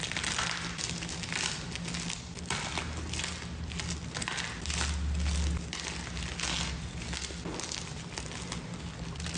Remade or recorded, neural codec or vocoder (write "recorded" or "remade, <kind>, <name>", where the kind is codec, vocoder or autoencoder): recorded